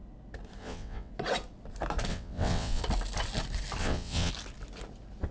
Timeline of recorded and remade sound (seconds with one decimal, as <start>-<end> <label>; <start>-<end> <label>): 0.0-0.6 recorded; 0.6-1.1 remade; 1.1-2.1 recorded; 2.1-2.8 remade; 2.8-3.8 recorded; 3.8-4.3 remade; 4.3-5.3 recorded